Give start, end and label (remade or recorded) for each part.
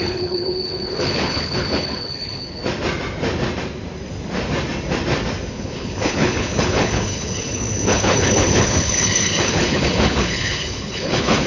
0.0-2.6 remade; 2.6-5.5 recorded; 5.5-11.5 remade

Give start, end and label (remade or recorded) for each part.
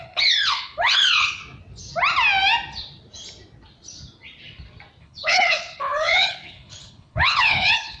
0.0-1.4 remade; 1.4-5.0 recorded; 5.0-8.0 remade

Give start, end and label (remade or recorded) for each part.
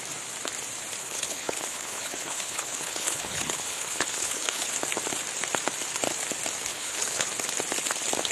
0.0-1.0 recorded; 1.0-4.7 remade; 4.7-6.7 recorded; 6.7-7.3 remade; 7.3-8.3 recorded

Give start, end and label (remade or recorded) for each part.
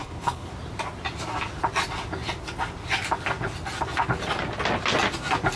0.0-0.5 remade; 0.5-5.6 recorded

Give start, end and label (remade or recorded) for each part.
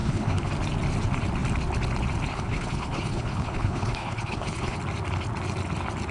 0.0-0.5 remade; 0.5-2.3 recorded; 2.3-4.8 remade; 4.8-6.1 recorded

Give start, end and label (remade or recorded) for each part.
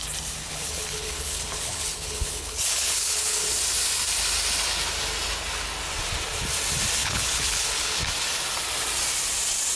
0.0-0.4 recorded; 0.4-3.4 remade; 3.4-7.0 recorded; 7.0-8.0 remade; 8.0-9.8 recorded